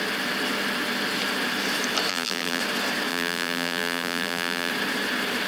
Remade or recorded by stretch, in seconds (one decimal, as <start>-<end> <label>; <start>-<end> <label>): 0.0-2.1 recorded; 2.1-2.6 remade; 2.6-3.1 recorded; 3.1-4.7 remade; 4.7-5.5 recorded